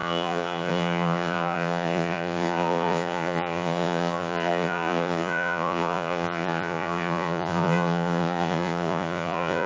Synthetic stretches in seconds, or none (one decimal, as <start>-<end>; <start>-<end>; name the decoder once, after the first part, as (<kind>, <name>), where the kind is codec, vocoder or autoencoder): 0.0-9.7 (vocoder, Vocos)